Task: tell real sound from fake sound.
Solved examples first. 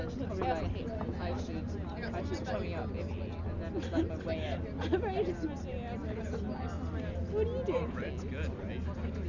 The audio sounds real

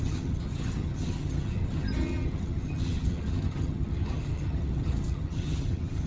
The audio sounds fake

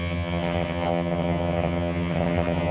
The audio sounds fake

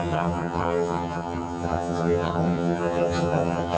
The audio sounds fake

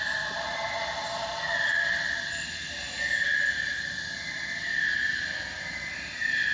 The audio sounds real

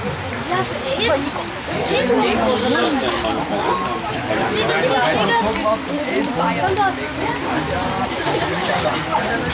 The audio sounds real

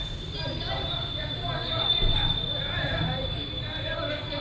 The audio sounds real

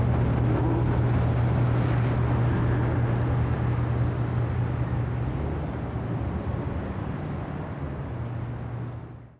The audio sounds real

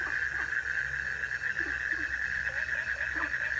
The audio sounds real